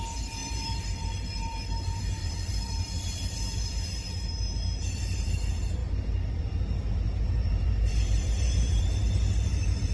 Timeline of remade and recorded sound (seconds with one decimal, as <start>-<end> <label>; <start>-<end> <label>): 0.0-9.9 remade